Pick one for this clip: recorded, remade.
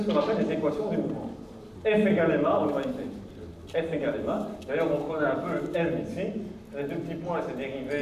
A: recorded